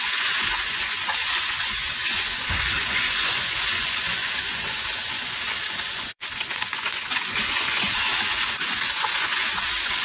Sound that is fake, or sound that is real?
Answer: fake